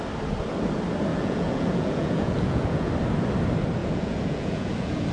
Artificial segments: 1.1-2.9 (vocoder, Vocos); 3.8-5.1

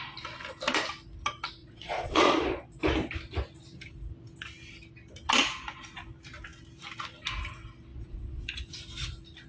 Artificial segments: 1.6-2.7 (vocoder, Vocos); 7.9-8.8

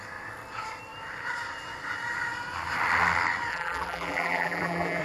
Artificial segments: 3.5-5.0 (vocoder, BigVGAN v2)

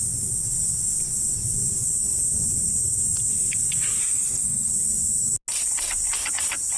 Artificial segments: 4.0-4.7 (codec, SNAC)

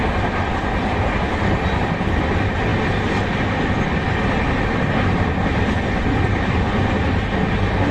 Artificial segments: none

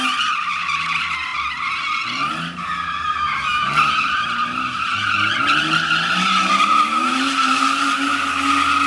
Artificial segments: none